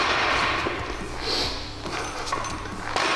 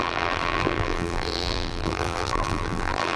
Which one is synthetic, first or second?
second